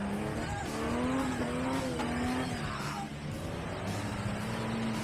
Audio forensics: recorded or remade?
recorded